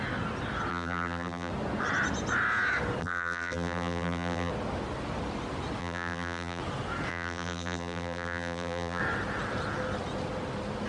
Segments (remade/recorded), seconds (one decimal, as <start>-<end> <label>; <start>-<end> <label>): 0.0-0.7 recorded; 0.7-1.5 remade; 1.5-3.0 recorded; 3.0-4.5 remade; 4.5-5.8 recorded; 5.8-6.6 remade; 6.6-7.1 recorded; 7.1-9.0 remade; 9.0-10.9 recorded